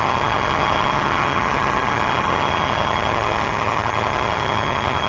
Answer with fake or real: fake